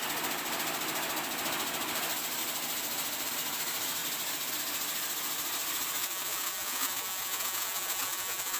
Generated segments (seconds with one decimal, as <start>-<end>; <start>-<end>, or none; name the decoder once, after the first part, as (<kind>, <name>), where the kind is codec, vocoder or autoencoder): 6.0-8.6 (vocoder, Vocos)